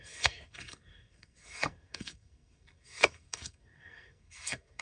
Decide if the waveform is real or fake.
fake